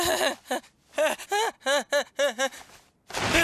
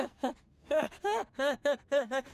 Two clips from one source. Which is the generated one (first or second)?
second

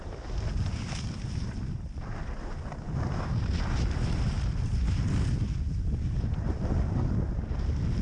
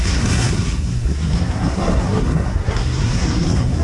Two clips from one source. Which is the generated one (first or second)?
second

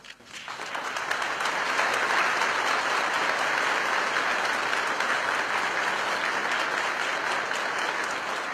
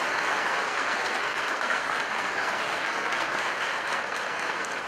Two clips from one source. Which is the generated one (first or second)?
second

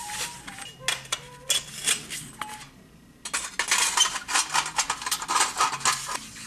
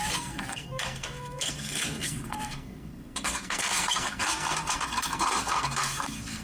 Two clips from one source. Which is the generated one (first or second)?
second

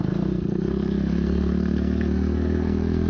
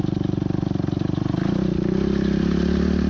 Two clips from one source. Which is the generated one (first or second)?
first